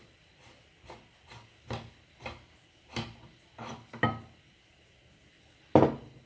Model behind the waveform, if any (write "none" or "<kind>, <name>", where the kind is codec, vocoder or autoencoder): none